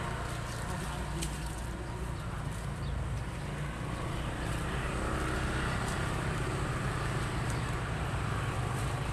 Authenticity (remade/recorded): recorded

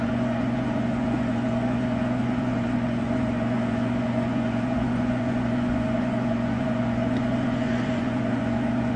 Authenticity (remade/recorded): remade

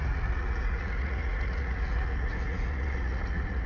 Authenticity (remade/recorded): remade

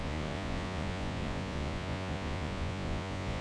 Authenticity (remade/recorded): remade